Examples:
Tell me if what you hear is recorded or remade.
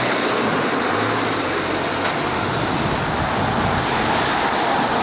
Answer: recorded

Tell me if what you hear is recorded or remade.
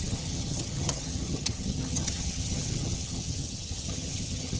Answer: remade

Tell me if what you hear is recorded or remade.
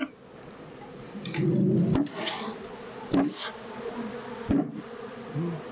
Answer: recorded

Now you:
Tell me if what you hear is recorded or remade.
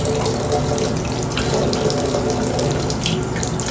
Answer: recorded